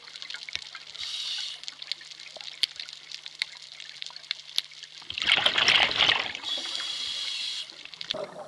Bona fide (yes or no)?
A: yes